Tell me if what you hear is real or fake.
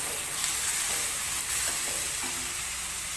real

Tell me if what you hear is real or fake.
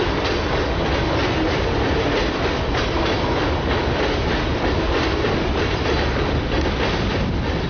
real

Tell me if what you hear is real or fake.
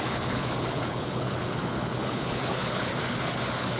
fake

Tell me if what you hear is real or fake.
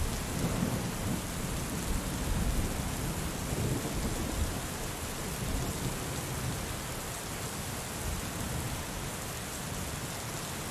real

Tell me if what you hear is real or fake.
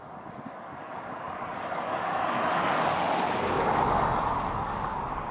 fake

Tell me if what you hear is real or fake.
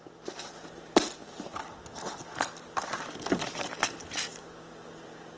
real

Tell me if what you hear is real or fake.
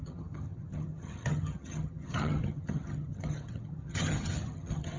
fake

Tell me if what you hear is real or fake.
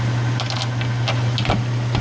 real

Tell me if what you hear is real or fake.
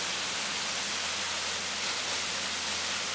real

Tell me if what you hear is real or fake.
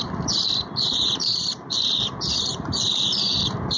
fake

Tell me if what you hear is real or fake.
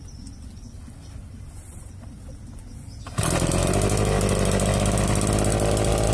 real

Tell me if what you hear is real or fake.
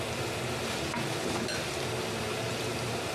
real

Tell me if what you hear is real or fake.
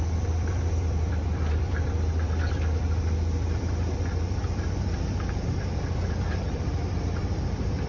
fake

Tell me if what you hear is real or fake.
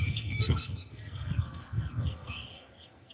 fake